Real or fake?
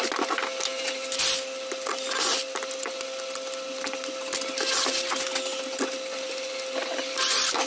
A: real